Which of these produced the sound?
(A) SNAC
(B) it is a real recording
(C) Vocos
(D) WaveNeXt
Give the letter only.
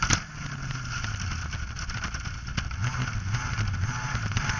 B